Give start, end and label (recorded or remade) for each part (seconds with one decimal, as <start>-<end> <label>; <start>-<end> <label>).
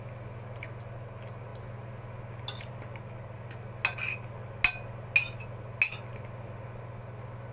0.0-7.5 recorded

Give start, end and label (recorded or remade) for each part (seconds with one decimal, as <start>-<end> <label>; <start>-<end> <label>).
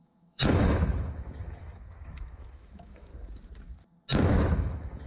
0.0-3.1 remade; 3.1-4.6 recorded; 4.6-5.1 remade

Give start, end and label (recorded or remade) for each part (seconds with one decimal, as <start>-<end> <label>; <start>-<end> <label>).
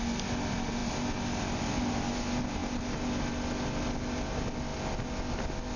0.0-5.8 recorded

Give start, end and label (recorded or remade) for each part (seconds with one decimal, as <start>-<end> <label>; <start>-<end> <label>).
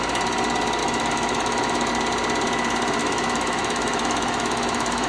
0.0-0.8 recorded; 0.8-1.9 remade; 1.9-3.0 recorded; 3.0-5.1 remade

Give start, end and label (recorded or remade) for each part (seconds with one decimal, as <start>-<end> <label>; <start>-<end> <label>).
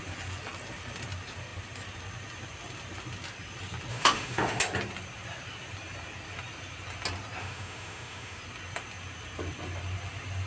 0.0-3.9 recorded; 3.9-4.6 remade; 4.6-7.4 recorded; 7.4-8.4 remade; 8.4-10.5 recorded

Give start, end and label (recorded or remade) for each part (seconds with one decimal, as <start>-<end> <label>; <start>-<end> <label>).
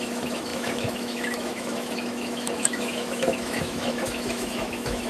0.0-5.1 remade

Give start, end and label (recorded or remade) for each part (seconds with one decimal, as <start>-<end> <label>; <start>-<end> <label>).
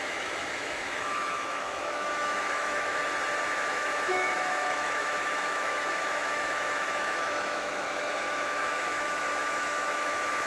0.0-3.0 remade; 3.0-3.5 recorded; 3.5-10.5 remade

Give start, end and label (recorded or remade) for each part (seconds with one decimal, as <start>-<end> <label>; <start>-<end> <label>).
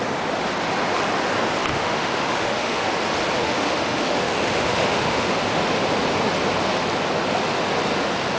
0.0-1.7 recorded; 1.7-2.8 remade; 2.8-3.4 recorded; 3.4-5.3 remade; 5.3-8.4 recorded